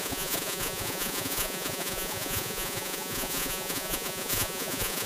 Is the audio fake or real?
fake